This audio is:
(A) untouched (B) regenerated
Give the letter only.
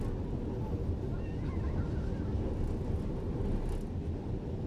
A